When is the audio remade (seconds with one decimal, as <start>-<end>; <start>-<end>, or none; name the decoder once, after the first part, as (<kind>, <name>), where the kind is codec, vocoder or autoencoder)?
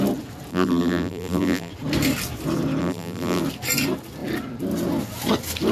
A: 0.5-1.7 (vocoder, BigVGAN v2); 2.8-3.4